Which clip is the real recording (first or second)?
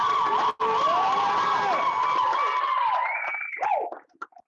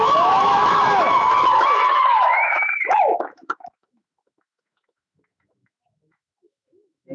first